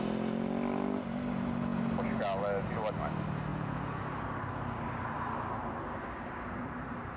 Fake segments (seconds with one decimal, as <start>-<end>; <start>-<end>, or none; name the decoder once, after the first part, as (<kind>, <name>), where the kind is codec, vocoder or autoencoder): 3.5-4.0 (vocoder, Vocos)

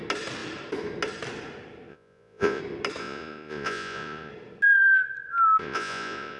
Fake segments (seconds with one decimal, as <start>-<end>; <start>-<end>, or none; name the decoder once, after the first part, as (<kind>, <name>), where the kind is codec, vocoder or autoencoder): 1.9-2.6 (vocoder, Vocos); 3.0-4.3; 5.6-6.4

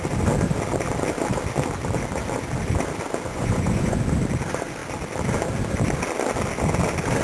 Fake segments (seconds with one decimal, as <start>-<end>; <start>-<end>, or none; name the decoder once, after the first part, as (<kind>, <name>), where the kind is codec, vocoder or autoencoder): 3.3-4.0 (vocoder, Vocos)

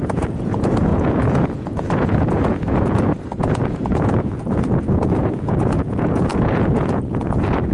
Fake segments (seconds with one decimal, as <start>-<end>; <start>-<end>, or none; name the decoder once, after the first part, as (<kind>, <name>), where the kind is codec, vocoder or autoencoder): 0.0-7.7 (vocoder, Vocos)